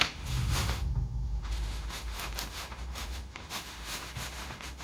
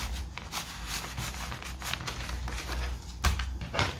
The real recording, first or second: second